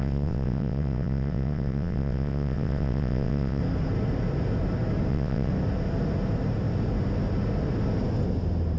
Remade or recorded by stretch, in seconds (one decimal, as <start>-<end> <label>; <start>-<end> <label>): 0.0-3.6 remade; 3.6-5.1 recorded; 5.1-5.5 remade; 5.5-8.8 recorded